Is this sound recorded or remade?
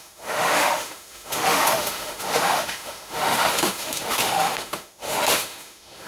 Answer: remade